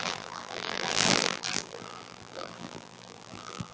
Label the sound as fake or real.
fake